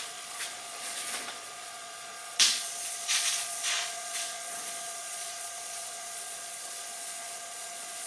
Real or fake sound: fake